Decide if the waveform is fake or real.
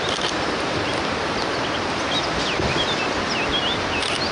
real